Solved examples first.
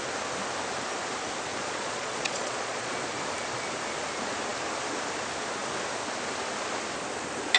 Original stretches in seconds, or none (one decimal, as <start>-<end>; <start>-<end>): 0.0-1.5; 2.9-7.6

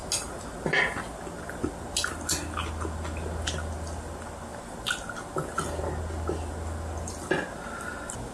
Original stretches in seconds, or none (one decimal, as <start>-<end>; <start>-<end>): 0.0-8.3

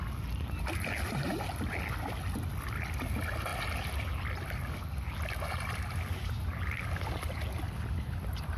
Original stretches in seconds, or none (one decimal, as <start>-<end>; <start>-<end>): 0.0-8.6